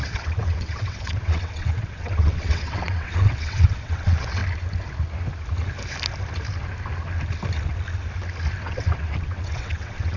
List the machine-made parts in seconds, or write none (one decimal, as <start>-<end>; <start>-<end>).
0.0-4.4; 8.6-10.2